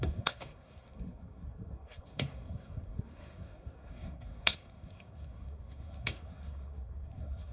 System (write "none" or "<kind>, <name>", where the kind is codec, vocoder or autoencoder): codec, SNAC